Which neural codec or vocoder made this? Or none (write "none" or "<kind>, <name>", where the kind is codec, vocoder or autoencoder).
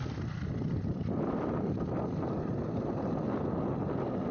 none